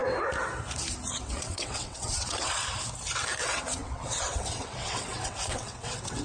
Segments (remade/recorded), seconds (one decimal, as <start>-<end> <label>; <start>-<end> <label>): 0.0-1.1 recorded; 1.1-2.6 remade; 2.6-3.4 recorded; 3.4-6.2 remade